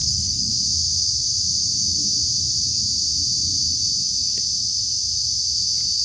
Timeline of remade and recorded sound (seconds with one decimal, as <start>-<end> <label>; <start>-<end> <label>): 0.0-0.5 remade; 0.5-6.0 recorded